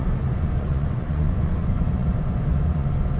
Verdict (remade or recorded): remade